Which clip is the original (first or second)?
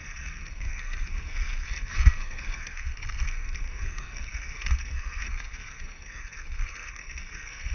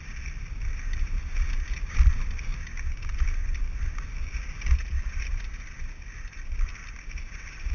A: second